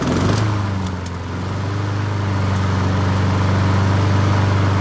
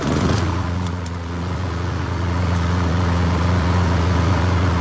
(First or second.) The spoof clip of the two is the second